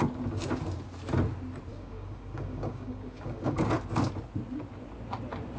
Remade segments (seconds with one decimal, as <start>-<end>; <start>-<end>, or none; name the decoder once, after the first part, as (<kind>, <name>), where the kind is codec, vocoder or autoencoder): 1.7-3.7 (codec, DAC)